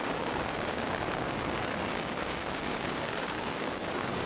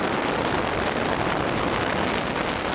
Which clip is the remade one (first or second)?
first